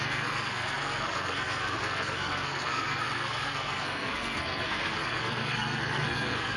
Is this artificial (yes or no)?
yes